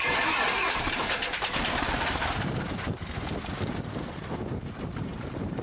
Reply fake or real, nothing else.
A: fake